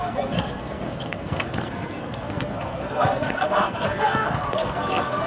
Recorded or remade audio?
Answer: remade